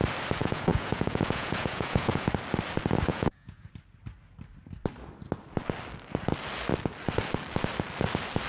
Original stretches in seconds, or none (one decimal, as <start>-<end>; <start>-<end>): 0.0-0.4; 2.3-3.1; 3.7-8.5